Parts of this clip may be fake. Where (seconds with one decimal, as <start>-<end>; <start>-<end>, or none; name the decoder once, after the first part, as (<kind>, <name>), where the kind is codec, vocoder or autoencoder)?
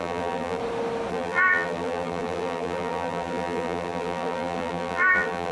0.0-0.6 (vocoder, BigVGAN v2); 1.1-5.5